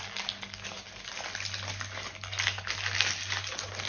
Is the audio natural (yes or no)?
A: yes